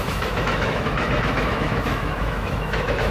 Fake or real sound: fake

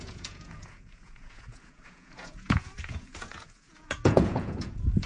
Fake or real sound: fake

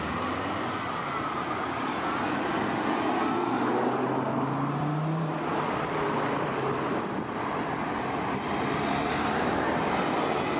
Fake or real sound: real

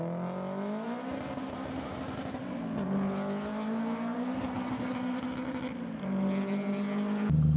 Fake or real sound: real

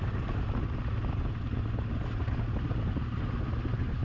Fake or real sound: real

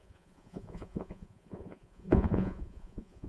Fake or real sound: fake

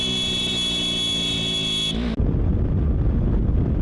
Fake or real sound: real